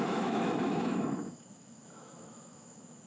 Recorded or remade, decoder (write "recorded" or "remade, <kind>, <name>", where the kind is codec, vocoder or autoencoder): remade, autoencoder, DAC-VAE